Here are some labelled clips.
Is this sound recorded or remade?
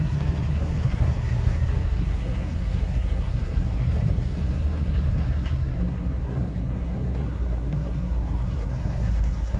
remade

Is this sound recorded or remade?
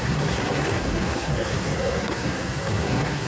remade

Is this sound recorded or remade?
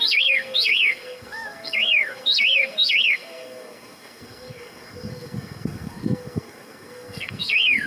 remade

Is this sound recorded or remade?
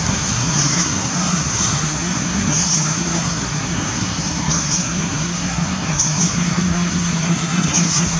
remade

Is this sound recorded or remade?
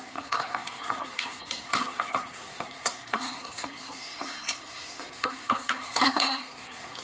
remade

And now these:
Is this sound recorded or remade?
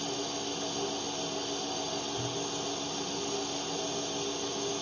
recorded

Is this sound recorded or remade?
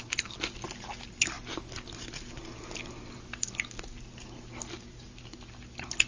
recorded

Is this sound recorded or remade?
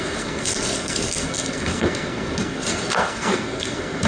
remade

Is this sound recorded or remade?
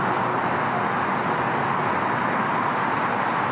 recorded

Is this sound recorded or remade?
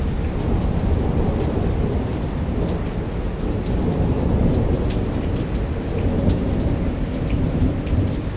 recorded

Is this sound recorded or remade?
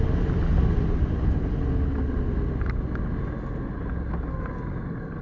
recorded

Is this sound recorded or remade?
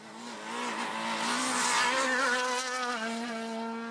recorded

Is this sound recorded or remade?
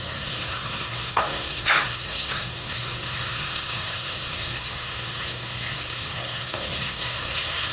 remade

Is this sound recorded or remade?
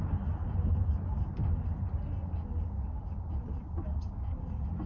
recorded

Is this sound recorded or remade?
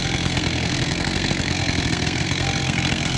remade